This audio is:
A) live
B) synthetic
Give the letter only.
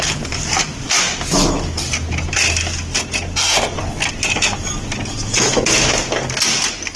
A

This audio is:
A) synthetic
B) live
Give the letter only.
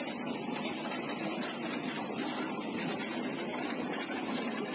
B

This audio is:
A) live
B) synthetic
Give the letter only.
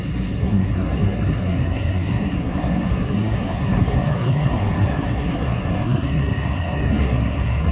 B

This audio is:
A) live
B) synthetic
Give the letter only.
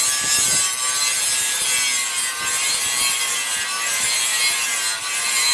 A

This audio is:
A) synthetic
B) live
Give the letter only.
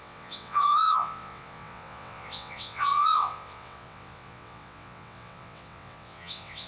A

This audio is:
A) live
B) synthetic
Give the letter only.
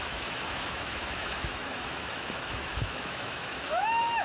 B